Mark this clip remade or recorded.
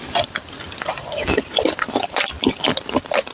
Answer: recorded